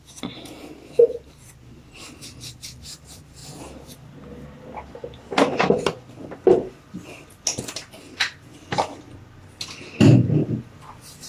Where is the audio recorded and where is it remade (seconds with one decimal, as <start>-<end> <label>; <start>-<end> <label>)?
0.0-11.3 recorded